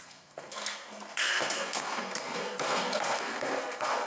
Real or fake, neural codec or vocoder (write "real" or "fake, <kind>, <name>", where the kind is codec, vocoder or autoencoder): fake, codec, SNAC